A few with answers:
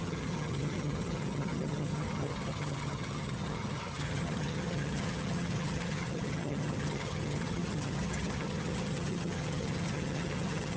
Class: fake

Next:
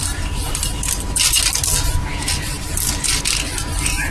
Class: real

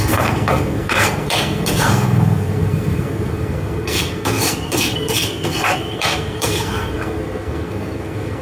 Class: fake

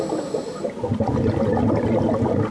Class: real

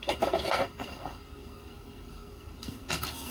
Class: fake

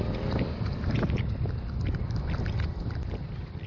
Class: real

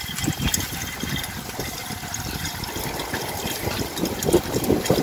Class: real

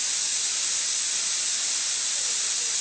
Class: real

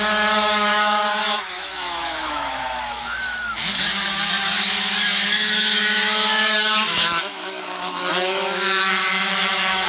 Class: fake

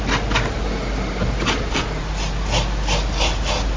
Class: fake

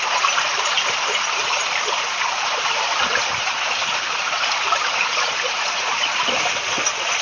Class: real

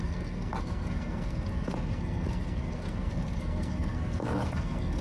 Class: fake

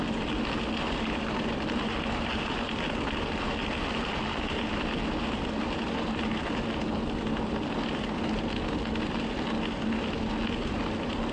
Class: real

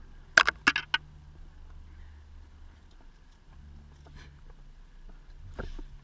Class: real